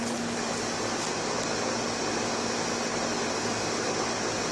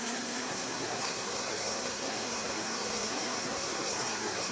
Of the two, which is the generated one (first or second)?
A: second